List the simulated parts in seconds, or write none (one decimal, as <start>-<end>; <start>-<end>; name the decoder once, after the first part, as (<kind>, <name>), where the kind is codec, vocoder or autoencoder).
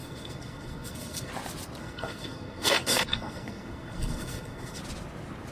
0.0-1.3 (codec, SNAC); 1.8-4.8